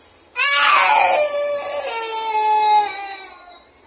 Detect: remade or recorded recorded